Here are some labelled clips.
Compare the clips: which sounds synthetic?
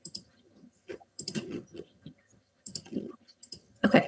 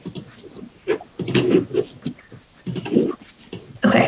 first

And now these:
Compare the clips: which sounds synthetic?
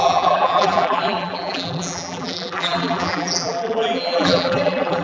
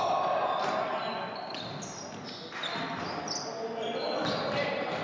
first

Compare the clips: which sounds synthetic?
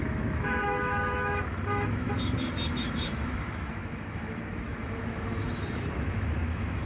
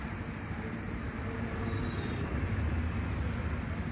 first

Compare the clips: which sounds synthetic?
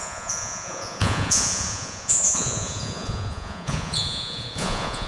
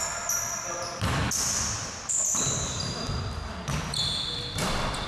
first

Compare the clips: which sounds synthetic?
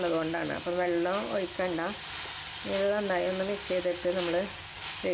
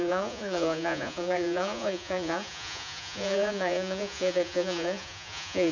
second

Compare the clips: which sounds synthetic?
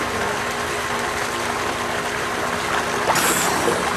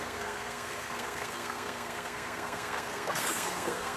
second